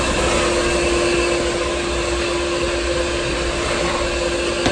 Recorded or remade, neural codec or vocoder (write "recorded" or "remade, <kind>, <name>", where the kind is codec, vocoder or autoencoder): recorded